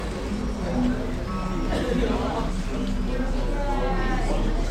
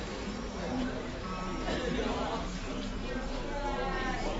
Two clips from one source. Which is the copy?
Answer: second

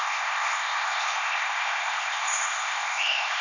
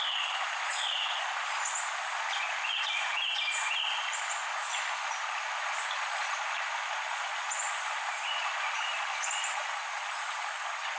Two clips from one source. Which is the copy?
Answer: first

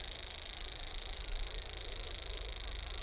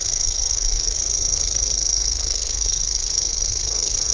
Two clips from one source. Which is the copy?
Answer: second